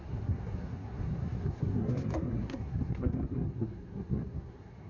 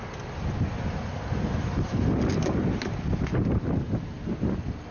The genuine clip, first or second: second